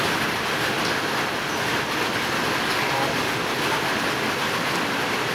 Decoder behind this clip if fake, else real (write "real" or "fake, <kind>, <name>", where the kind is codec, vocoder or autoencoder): real